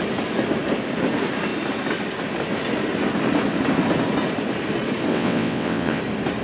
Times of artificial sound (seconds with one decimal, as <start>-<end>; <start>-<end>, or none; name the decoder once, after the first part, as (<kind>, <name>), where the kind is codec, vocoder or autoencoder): 5.1-6.0 (vocoder, WaveNeXt)